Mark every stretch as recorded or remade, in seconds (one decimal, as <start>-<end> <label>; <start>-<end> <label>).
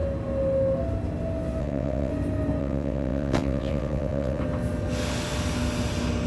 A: 0.0-1.6 recorded; 1.6-2.1 remade; 2.1-2.6 recorded; 2.6-4.4 remade; 4.4-6.3 recorded